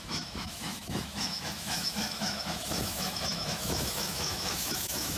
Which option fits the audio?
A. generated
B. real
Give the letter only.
A